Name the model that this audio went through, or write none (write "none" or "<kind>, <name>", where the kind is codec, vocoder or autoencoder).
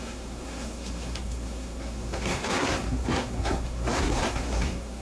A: codec, SNAC